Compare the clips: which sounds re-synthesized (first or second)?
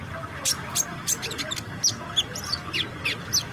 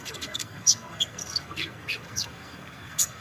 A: second